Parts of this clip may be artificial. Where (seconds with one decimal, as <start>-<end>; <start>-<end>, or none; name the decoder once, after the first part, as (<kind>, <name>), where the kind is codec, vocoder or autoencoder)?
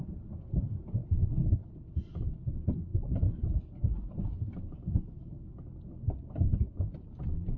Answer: 1.0-1.7 (codec, HILCodec)